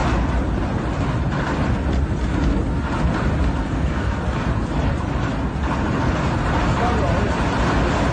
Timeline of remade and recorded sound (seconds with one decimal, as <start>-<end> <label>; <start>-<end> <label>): 0.0-3.6 recorded; 3.6-4.2 remade; 4.2-8.1 recorded